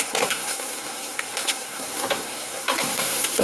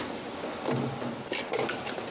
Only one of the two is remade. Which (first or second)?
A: first